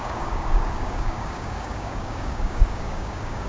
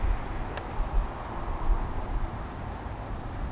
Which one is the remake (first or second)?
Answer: first